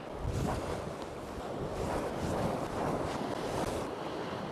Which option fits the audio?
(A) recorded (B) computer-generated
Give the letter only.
A